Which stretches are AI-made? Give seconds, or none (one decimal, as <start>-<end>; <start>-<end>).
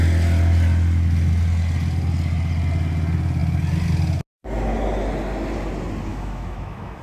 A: 6.1-7.0